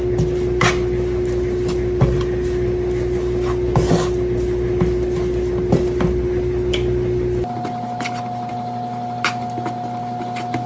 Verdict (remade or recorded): recorded